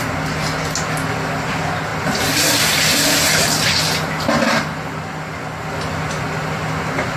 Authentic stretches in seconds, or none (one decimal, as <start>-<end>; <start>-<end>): 0.0-7.2